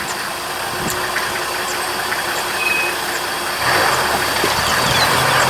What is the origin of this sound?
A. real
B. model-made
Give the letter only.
B